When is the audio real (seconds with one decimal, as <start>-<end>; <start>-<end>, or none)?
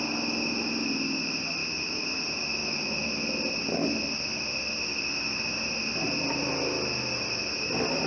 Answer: 0.0-1.6; 2.2-2.6; 3.1-8.1